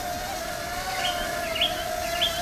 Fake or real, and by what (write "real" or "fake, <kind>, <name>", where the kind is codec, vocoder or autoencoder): real